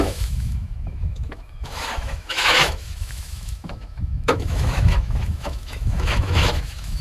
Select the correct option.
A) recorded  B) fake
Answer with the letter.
B